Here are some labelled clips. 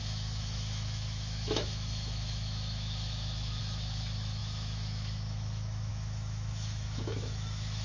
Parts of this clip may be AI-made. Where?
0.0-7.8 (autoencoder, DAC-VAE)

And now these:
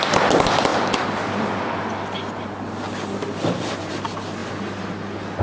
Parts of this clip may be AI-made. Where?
none

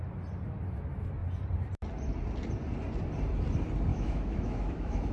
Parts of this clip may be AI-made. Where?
3.9-5.1 (autoencoder, DAC-VAE)